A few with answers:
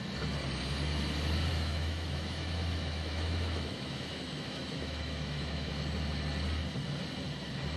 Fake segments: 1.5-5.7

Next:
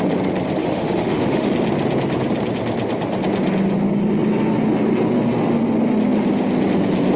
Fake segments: 0.6-1.5